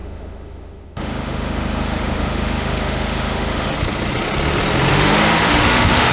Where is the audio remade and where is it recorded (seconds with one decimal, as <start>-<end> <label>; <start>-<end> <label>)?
0.0-3.7 remade; 3.7-4.9 recorded; 4.9-6.1 remade